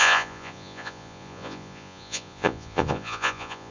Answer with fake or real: fake